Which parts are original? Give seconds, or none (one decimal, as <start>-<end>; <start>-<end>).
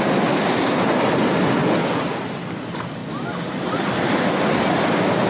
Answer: 0.0-1.6; 2.6-3.0; 4.2-5.3